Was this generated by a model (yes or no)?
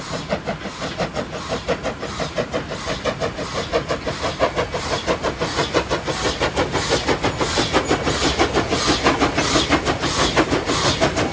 no